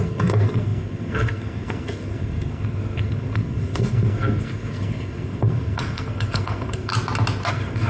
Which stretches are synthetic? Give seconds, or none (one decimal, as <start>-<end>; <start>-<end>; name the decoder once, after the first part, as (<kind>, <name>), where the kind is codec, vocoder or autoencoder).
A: 0.0-6.9 (codec, SNAC); 7.5-7.9